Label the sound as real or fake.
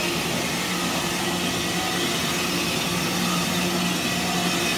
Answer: real